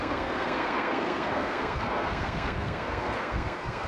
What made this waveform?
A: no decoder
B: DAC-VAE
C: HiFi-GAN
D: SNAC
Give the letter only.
D